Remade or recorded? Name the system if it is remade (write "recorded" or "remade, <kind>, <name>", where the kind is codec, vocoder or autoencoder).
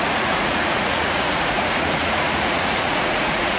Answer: remade, vocoder, Vocos